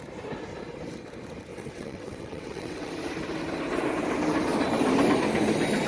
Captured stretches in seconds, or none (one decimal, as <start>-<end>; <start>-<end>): 0.0-1.5; 2.9-5.9